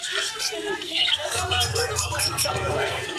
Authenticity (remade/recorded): remade